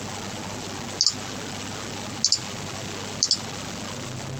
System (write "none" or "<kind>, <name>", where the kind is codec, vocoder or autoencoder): none